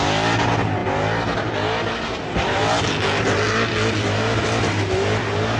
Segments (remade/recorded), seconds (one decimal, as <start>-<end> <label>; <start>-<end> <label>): 0.0-5.6 recorded